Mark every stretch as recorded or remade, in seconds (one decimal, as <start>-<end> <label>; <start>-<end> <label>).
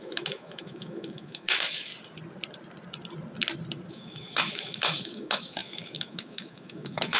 0.0-1.9 remade; 1.9-3.9 recorded; 3.9-7.2 remade